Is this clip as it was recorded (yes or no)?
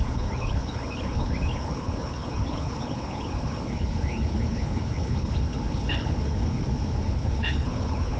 no